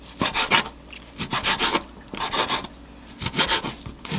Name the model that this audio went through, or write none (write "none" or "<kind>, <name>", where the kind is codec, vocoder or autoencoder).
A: vocoder, BigVGAN v2